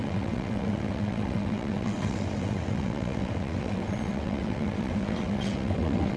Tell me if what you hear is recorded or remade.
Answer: remade